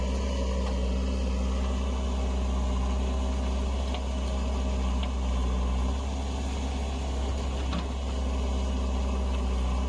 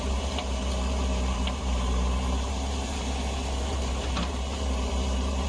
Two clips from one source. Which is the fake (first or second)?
second